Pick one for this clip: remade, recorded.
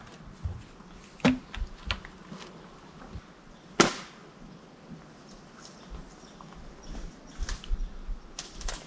recorded